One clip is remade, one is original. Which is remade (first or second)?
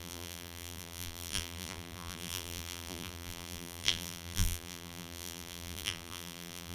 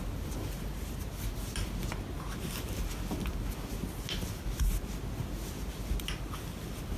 first